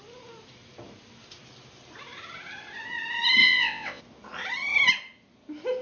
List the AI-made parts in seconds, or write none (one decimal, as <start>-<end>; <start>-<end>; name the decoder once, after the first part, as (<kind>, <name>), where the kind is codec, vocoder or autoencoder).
3.4-4.0 (vocoder, WaveNeXt)